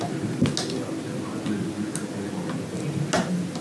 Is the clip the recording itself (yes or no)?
yes